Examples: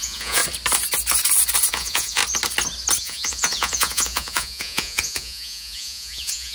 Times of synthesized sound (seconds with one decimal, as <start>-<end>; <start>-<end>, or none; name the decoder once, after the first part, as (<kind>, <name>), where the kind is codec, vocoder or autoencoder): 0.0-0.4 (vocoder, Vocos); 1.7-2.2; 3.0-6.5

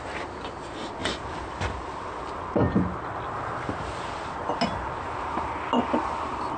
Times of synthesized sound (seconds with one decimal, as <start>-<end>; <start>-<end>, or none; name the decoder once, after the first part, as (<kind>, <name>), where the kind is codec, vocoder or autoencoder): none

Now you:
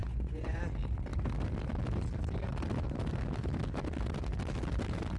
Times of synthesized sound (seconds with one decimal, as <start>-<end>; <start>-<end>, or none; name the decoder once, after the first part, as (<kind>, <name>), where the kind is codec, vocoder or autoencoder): 0.0-0.6 (vocoder, Vocos)

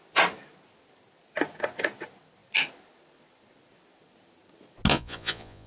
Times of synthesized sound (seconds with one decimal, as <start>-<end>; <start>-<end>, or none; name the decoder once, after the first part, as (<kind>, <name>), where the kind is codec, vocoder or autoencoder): 4.9-5.7 (vocoder, Vocos)

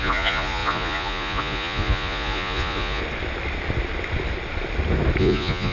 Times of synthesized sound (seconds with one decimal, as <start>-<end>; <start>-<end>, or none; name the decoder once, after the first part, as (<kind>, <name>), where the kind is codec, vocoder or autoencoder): 0.0-3.0 (vocoder, Vocos); 5.2-5.7

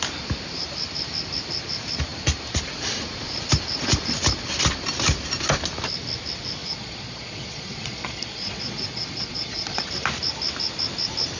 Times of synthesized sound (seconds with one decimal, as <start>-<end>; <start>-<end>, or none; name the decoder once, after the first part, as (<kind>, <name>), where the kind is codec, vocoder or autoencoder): 6.6-9.9 (vocoder, Vocos)

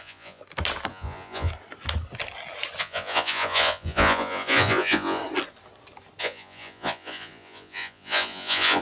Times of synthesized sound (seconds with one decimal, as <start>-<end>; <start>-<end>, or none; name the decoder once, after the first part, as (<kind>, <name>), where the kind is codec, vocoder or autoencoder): 0.0-0.4 (vocoder, Vocos); 0.9-1.5; 2.8-5.2; 6.2-8.8